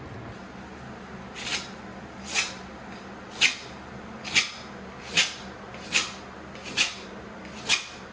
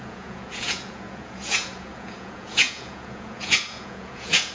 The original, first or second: first